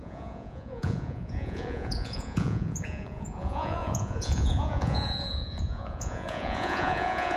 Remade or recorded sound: remade